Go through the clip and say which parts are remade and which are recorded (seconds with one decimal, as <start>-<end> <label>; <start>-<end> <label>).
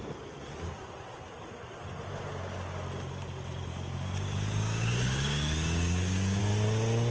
0.0-3.7 recorded; 3.7-6.4 remade; 6.4-7.1 recorded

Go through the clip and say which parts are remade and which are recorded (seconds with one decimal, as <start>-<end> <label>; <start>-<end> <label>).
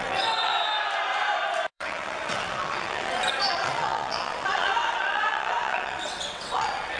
0.0-0.5 remade; 0.5-1.7 recorded; 1.7-7.0 remade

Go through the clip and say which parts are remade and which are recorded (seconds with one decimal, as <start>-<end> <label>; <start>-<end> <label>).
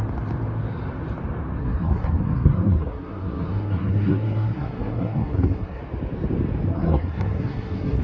0.0-1.6 recorded; 1.6-5.8 remade; 5.8-6.7 recorded; 6.7-8.0 remade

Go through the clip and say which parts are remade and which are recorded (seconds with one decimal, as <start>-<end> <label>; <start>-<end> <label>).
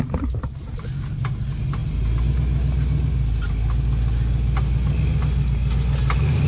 0.0-6.5 recorded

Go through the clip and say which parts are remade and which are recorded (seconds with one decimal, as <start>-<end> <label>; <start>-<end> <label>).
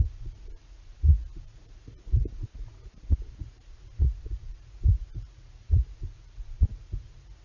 0.0-7.4 remade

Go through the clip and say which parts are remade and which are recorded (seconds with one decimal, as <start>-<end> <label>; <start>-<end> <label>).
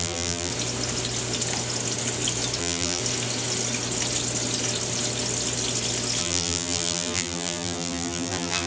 0.0-0.5 remade; 0.5-2.6 recorded; 2.6-3.0 remade; 3.0-6.2 recorded; 6.2-8.7 remade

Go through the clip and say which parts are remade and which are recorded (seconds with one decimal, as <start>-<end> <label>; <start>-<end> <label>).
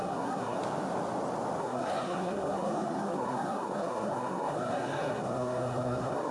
0.0-0.6 remade; 0.6-1.6 recorded; 1.6-6.3 remade